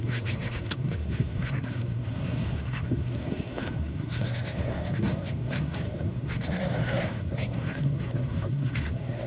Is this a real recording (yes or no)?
no